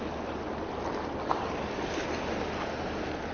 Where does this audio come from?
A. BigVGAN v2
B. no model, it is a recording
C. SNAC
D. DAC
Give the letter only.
B